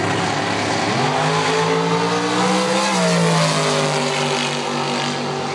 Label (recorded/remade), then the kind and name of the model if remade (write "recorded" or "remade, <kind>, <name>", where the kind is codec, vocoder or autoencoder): recorded